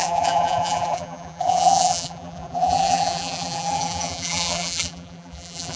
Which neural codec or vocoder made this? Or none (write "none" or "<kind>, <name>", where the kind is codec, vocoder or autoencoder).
vocoder, BigVGAN v2